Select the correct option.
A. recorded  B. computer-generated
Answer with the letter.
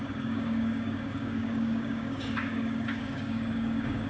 B